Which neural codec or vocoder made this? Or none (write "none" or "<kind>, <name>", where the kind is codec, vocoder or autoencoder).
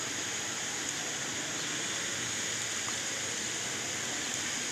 none